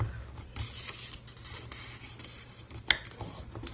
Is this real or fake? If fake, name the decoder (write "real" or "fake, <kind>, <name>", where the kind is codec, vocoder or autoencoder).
real